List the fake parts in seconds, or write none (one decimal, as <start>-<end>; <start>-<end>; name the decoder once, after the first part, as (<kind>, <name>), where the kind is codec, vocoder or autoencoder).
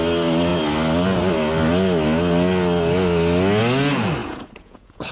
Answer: 4.2-5.1 (vocoder, Vocos)